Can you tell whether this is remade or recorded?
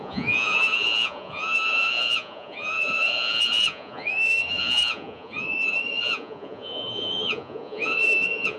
remade